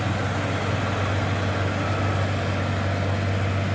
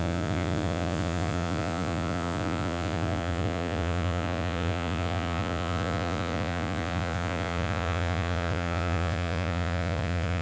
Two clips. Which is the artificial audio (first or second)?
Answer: second